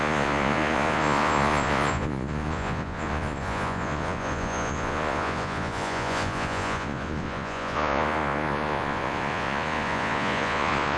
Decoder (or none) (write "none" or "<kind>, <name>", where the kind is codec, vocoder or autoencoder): vocoder, Vocos